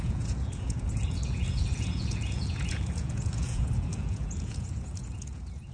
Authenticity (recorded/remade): remade